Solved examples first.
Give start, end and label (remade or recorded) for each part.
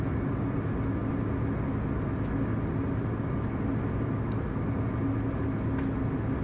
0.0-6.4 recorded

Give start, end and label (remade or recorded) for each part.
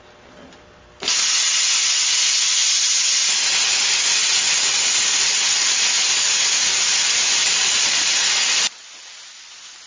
0.0-7.4 recorded; 7.4-8.2 remade; 8.2-9.9 recorded